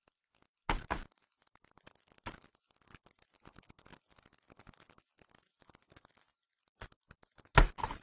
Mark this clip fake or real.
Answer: real